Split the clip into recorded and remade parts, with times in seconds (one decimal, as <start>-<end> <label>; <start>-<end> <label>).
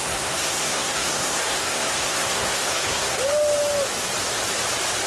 0.0-3.2 remade; 3.2-5.1 recorded